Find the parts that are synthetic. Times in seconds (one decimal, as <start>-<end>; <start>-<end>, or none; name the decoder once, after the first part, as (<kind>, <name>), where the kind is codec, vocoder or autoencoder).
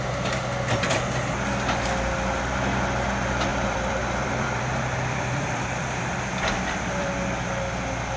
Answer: 3.5-6.4 (vocoder, BigVGAN v2)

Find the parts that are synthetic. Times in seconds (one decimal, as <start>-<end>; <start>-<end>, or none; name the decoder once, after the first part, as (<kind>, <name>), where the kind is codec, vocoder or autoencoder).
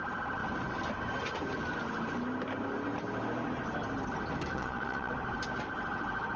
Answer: 4.5-5.1 (vocoder, Vocos)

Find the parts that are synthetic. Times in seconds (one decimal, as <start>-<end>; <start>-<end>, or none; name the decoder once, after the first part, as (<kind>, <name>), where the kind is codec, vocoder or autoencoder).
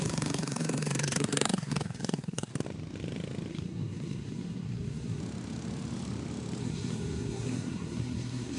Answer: 0.0-2.5 (codec, SNAC); 3.5-5.2; 6.6-8.6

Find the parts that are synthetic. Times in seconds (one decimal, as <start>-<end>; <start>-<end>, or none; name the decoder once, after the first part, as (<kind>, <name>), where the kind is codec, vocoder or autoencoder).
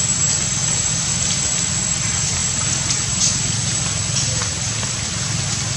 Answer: none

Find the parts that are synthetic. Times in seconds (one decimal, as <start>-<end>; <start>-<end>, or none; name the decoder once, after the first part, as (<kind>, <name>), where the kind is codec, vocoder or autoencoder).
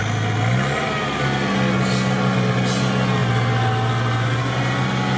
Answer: none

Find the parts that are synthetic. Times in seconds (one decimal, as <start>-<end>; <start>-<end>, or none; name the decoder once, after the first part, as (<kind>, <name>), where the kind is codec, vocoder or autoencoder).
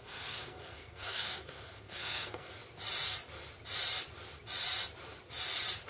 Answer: 0.0-2.6 (codec, SNAC)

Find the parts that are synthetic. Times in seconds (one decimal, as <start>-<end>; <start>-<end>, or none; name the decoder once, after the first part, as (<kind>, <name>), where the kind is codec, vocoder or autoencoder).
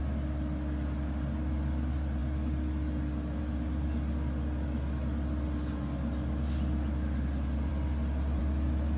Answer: none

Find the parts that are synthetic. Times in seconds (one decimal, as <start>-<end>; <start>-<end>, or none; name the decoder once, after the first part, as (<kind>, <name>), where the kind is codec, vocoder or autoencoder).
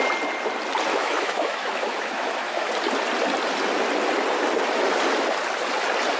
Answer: 0.9-2.7 (autoencoder, DAC-VAE)